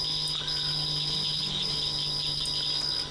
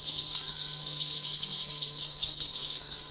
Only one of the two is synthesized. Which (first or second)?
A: second